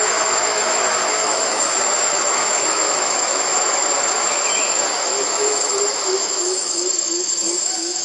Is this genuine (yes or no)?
no